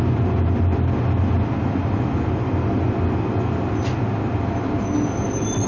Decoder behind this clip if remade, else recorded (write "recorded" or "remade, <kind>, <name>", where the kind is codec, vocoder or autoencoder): recorded